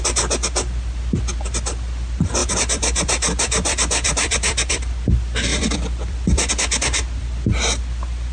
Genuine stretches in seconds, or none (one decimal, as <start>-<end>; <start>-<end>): 0.0-2.4; 4.8-5.5; 6.5-8.3

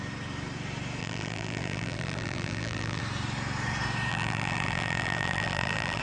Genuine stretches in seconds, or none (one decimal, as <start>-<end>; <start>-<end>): 0.0-1.0; 3.0-4.1

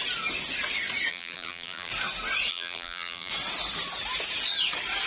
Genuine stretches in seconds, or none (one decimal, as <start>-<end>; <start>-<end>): 0.0-1.1; 1.9-2.5; 3.3-5.1

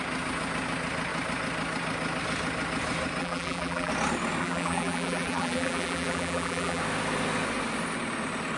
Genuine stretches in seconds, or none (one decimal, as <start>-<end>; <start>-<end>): 0.0-3.2; 3.9-4.4; 6.8-8.6

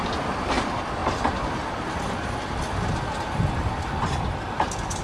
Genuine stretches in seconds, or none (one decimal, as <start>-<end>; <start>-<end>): 0.0-5.0

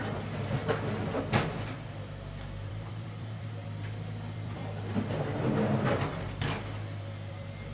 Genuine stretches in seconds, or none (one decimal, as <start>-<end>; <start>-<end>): 0.6-1.9; 4.6-7.3